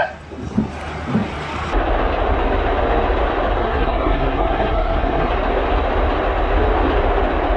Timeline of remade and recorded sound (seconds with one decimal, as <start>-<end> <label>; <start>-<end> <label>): 0.0-3.6 recorded; 3.6-5.3 remade; 5.3-7.6 recorded